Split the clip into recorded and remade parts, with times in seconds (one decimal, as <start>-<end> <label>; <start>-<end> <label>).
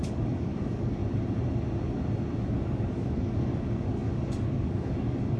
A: 0.0-1.0 remade; 1.0-2.5 recorded; 2.5-5.4 remade